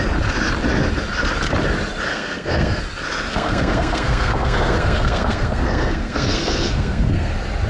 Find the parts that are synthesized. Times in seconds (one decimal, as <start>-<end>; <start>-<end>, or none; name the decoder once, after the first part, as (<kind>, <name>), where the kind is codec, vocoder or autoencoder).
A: 2.1-2.8 (codec, SNAC); 3.3-7.3